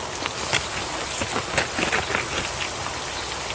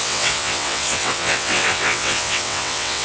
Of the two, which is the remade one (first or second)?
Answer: second